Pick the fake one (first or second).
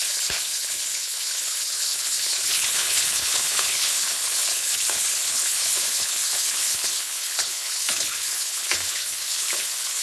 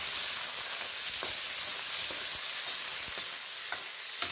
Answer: first